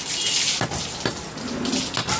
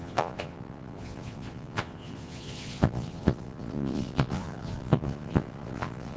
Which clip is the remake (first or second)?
second